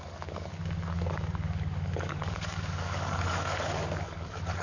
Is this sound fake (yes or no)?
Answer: yes